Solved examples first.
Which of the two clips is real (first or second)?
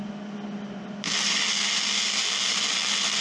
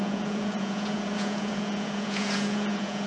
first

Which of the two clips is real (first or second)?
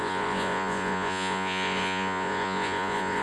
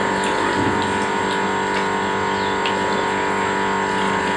second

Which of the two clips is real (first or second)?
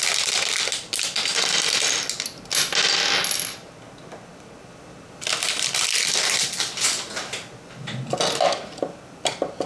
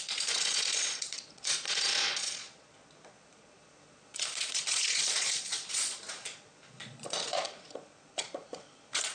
first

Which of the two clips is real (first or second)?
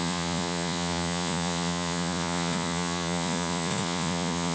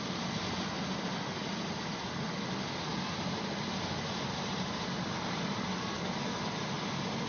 second